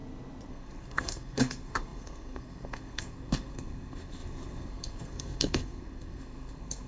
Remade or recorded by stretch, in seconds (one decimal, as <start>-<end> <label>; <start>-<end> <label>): 0.0-0.5 recorded; 0.5-6.9 remade